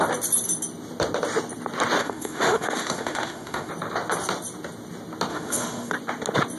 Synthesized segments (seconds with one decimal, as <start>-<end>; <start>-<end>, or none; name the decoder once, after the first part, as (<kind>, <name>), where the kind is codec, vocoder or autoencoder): 2.0-3.7 (autoencoder, DAC-VAE); 5.3-5.9